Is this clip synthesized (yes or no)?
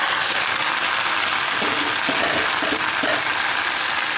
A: no